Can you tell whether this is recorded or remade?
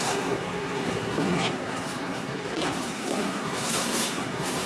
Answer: remade